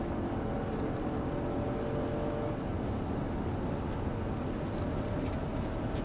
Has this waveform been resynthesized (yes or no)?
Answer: no